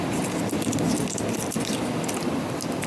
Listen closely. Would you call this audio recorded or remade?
recorded